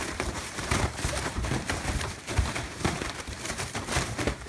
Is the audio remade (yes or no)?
yes